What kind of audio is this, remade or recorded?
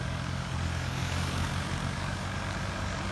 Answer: remade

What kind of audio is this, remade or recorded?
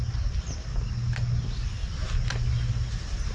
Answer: recorded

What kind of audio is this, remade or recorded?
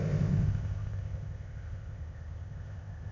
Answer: remade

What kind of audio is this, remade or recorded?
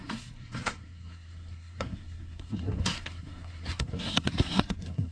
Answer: remade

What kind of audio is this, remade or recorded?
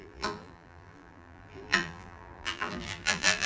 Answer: remade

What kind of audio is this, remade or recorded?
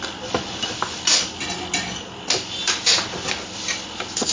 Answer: recorded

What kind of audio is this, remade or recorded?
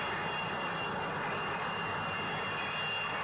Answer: remade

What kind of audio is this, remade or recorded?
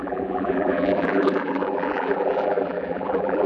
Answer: remade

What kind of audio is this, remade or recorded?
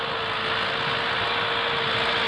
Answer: recorded